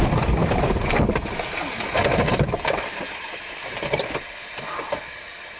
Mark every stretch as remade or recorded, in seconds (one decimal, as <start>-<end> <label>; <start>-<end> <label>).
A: 0.0-0.4 recorded; 0.4-3.8 remade; 3.8-5.6 recorded